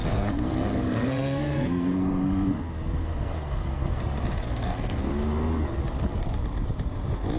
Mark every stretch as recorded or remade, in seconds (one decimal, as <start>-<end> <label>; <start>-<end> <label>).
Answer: 0.0-2.6 remade; 2.6-3.0 recorded; 3.0-4.0 remade; 4.0-4.4 recorded; 4.4-5.1 remade; 5.1-7.4 recorded